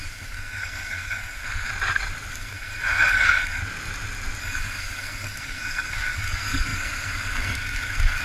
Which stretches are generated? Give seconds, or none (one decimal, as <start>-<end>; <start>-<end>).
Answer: 0.0-1.7; 2.3-3.6; 4.4-8.2